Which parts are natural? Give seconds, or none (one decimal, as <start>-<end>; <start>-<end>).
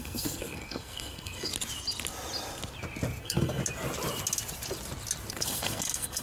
1.5-3.2; 3.6-5.3